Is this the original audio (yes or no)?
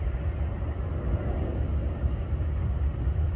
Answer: yes